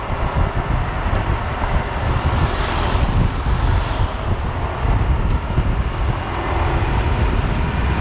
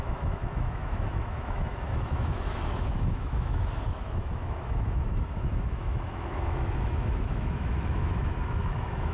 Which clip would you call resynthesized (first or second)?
second